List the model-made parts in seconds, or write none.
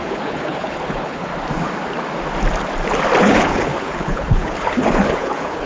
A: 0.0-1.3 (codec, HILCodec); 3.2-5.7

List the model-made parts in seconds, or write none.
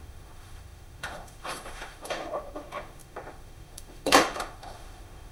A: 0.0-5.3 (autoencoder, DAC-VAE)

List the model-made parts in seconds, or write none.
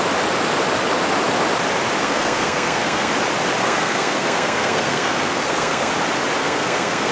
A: 2.0-3.1 (codec, SNAC); 3.6-5.9; 6.4-7.1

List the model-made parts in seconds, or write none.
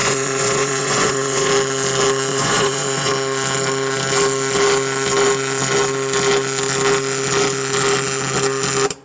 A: 0.0-1.5 (vocoder, Vocos); 2.3-3.1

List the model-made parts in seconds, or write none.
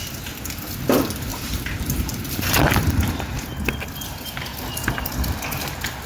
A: 1.3-3.1 (vocoder, BigVGAN v2)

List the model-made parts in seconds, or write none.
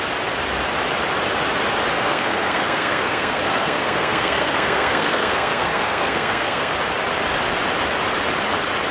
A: 1.9-6.7 (codec, SNAC)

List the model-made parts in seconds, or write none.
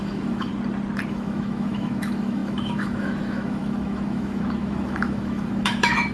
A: 0.0-0.5 (autoencoder, DAC-VAE); 1.1-6.1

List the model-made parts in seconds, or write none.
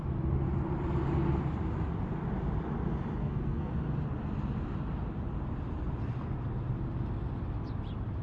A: 3.2-3.7 (codec, SNAC)